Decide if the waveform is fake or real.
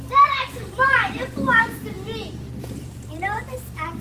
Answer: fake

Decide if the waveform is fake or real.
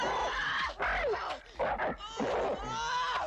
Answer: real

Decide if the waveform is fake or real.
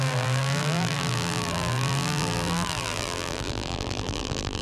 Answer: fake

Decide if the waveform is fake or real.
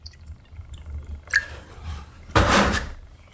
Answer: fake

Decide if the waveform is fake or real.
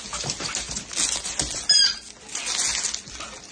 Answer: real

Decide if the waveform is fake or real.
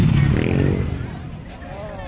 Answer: real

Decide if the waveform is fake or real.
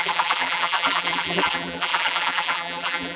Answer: fake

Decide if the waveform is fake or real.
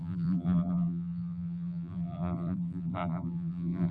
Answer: fake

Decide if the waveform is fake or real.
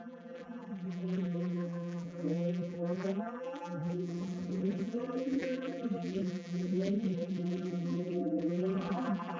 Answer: fake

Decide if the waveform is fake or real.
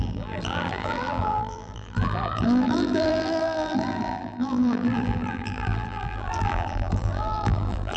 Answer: fake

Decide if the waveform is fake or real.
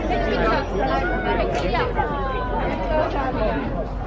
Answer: real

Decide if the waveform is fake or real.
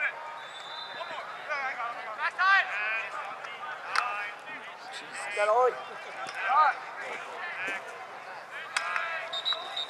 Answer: real